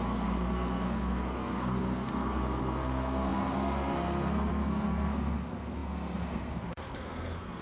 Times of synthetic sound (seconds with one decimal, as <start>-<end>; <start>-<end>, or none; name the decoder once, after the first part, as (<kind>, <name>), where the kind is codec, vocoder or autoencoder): 0.0-7.6 (codec, SNAC)